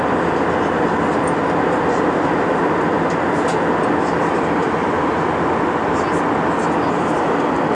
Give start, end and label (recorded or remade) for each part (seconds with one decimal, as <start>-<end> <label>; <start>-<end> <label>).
0.0-7.7 recorded